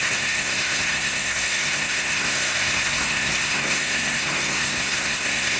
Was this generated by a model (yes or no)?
yes